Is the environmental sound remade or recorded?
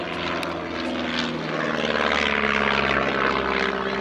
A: recorded